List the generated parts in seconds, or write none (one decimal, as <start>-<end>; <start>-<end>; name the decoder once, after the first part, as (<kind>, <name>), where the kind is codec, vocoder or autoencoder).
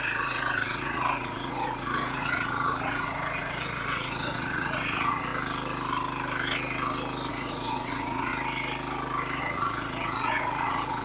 0.0-5.3 (vocoder, Vocos); 7.3-8.3; 9.4-11.0